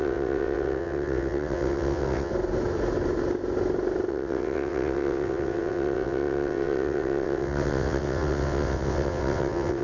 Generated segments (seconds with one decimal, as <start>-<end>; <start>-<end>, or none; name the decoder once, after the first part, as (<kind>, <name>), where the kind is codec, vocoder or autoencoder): 0.0-2.3 (vocoder, WaveNeXt); 4.1-9.8